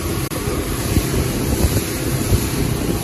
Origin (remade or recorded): remade